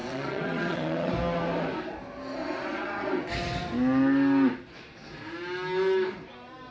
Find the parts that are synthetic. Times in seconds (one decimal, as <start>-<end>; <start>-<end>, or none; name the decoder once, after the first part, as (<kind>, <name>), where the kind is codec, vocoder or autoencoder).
0.0-1.1 (vocoder, WaveNeXt); 2.4-3.3